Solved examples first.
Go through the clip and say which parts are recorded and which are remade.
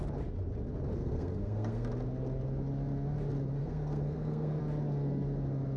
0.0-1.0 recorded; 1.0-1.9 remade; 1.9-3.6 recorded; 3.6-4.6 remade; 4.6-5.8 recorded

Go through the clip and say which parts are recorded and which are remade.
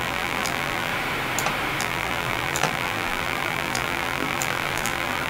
0.0-0.9 remade; 0.9-1.8 recorded; 1.8-5.3 remade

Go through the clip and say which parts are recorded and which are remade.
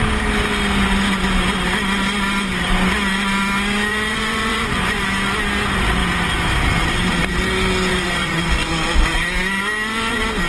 0.0-3.9 recorded; 3.9-5.0 remade; 5.0-7.9 recorded; 7.9-8.7 remade; 8.7-10.5 recorded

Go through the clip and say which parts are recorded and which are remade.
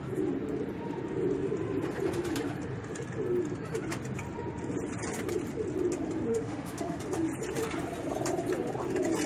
0.0-6.3 recorded; 6.3-7.0 remade; 7.0-9.3 recorded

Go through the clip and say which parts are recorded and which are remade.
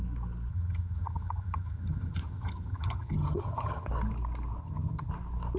0.0-0.5 recorded; 0.5-3.9 remade; 3.9-4.6 recorded; 4.6-5.1 remade; 5.1-5.6 recorded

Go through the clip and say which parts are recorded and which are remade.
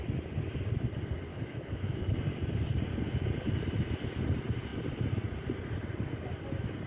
0.0-1.3 recorded; 1.3-2.2 remade; 2.2-6.9 recorded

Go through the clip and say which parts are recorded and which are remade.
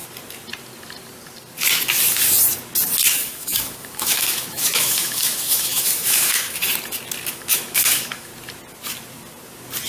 0.0-3.1 recorded; 3.1-6.6 remade; 6.6-7.3 recorded; 7.3-8.3 remade; 8.3-9.9 recorded